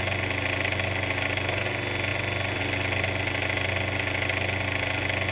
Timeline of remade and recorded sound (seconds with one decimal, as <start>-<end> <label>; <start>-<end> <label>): 0.0-5.3 recorded